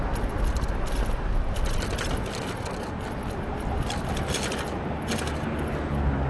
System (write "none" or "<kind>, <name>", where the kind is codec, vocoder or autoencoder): none